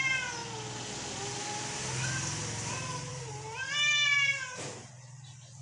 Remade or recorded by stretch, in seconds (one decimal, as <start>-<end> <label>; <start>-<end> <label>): 0.0-5.6 recorded